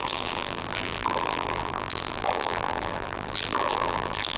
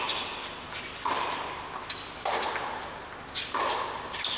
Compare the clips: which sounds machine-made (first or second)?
first